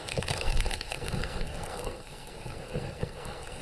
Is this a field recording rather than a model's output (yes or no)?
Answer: no